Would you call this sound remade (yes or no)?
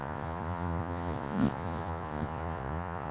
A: yes